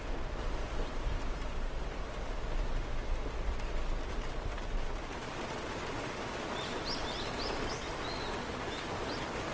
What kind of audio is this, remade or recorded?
recorded